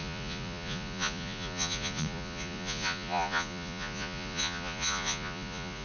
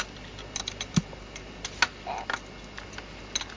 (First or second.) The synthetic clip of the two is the first